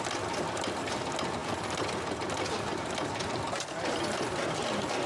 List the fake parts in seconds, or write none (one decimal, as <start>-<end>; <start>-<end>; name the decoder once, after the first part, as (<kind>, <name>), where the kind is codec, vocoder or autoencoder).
none